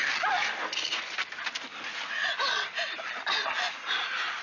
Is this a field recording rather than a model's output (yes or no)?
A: yes